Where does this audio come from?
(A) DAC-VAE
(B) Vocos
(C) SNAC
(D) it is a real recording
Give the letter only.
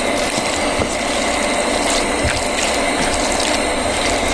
D